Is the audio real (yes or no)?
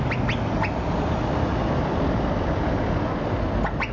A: yes